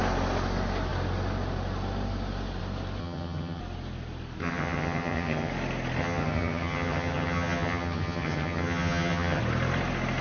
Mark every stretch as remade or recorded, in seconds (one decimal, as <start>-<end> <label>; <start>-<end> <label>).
0.0-3.0 recorded; 3.0-3.6 remade; 3.6-4.4 recorded; 4.4-5.5 remade; 5.5-6.0 recorded; 6.0-9.4 remade; 9.4-10.2 recorded